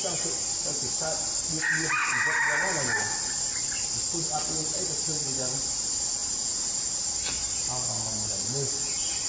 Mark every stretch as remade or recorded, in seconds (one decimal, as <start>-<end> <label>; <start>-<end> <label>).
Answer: 0.0-6.2 recorded; 6.2-7.0 remade; 7.0-9.3 recorded